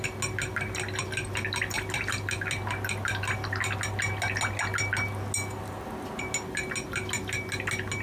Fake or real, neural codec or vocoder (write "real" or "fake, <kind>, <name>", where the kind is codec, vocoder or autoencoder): real